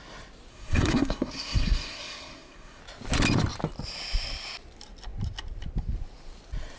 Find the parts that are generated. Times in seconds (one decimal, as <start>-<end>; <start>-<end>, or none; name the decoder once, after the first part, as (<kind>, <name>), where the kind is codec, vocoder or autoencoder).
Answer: 0.5-2.8 (codec, SNAC)